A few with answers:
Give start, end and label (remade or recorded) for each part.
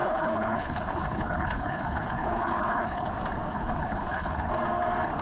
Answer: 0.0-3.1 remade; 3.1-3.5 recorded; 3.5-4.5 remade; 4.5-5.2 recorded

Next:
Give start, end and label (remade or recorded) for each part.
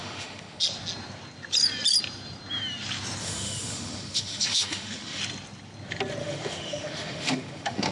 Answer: 0.0-0.6 remade; 0.6-3.2 recorded; 3.2-5.2 remade; 5.2-6.2 recorded; 6.2-7.9 remade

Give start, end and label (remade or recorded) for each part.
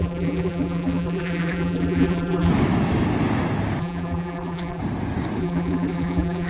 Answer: 0.0-2.5 remade; 2.5-3.8 recorded; 3.8-4.8 remade; 4.8-5.4 recorded; 5.4-6.5 remade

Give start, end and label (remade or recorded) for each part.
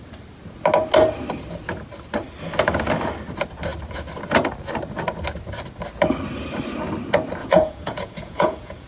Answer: 0.0-7.4 recorded; 7.4-8.9 remade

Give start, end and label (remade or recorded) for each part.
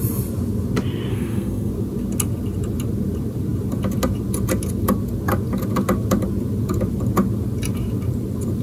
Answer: 0.0-1.1 recorded; 1.1-1.7 remade; 1.7-8.6 recorded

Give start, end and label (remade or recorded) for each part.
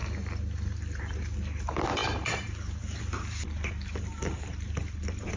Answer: 0.0-2.0 recorded; 2.0-5.4 remade